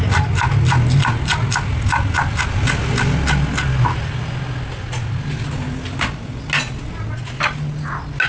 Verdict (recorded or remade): recorded